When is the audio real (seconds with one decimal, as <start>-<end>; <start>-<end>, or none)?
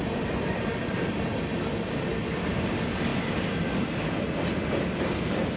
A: 0.0-5.6